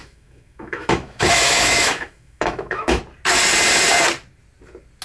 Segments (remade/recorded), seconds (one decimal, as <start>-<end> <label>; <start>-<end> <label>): 0.0-3.0 remade; 3.0-5.0 recorded